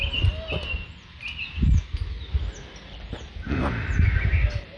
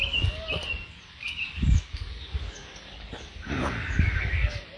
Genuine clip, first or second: first